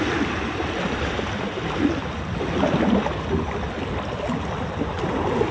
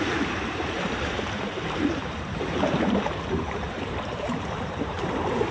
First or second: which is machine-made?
second